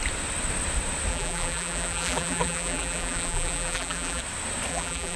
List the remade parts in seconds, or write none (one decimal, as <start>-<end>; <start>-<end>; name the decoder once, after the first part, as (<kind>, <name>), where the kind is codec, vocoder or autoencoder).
1.1-4.2 (vocoder, BigVGAN v2); 4.7-5.2